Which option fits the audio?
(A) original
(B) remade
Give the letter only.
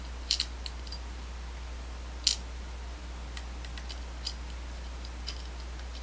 A